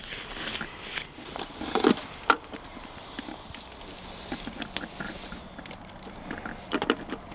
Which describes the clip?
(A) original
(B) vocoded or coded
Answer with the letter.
A